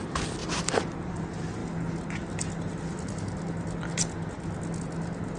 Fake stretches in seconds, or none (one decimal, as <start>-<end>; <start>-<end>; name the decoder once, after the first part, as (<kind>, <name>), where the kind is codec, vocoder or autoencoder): 0.4-1.1 (vocoder, BigVGAN v2)